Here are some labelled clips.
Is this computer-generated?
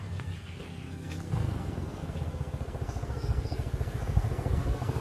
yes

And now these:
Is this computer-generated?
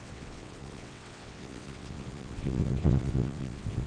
yes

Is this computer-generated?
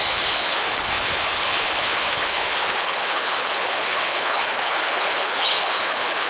yes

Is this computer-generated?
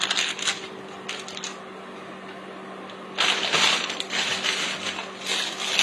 no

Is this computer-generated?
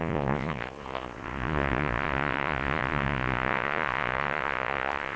yes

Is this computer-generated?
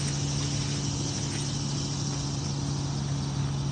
no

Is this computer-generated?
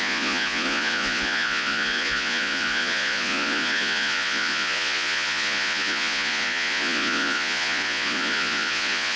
yes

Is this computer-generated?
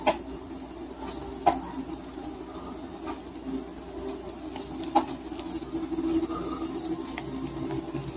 no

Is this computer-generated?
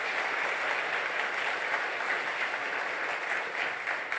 no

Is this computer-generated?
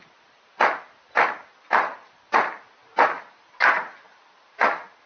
no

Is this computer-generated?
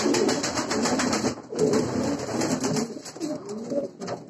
no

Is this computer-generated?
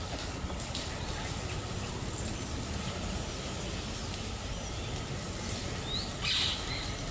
no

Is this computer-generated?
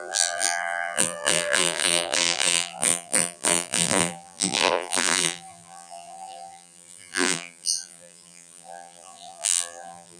yes